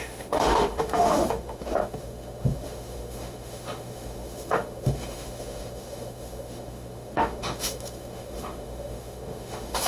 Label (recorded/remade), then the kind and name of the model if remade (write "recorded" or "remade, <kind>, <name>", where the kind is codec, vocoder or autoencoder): remade, autoencoder, DAC-VAE